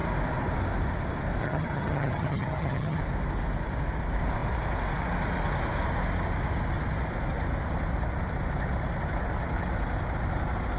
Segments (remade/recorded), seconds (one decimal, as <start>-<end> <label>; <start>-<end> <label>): 0.0-1.4 recorded; 1.4-3.0 remade; 3.0-10.8 recorded